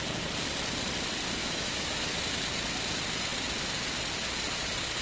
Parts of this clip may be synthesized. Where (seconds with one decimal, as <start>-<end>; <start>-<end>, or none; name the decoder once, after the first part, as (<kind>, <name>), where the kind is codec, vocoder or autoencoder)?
1.4-2.2 (autoencoder, DAC-VAE)